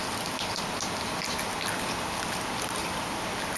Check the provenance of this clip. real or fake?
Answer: real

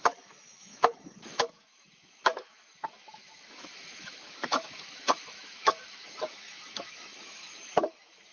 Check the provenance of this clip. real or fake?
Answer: fake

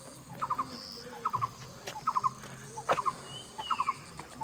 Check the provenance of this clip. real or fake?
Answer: real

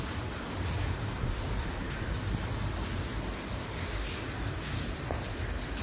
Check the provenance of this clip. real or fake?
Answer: real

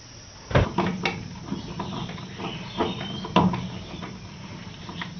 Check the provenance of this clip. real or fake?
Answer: real